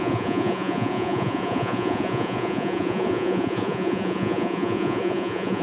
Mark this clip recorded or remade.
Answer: remade